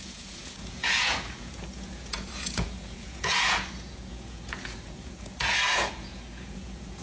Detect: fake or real fake